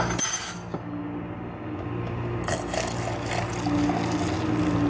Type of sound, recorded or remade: recorded